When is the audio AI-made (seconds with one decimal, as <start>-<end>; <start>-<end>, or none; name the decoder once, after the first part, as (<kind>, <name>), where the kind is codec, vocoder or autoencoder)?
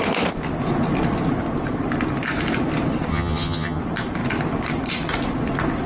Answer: 3.1-3.8 (vocoder, HiFi-GAN)